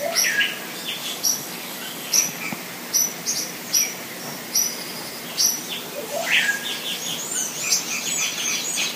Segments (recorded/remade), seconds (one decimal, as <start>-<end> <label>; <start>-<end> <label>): 0.0-1.0 recorded; 1.0-2.4 remade; 2.4-9.0 recorded